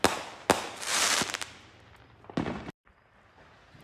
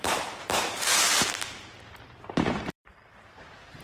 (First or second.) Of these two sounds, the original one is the first